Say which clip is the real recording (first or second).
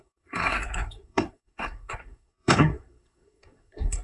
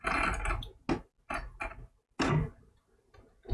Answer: second